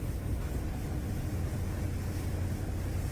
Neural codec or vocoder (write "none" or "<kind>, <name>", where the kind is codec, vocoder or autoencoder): none